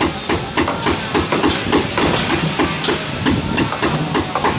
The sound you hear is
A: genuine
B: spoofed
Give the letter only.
A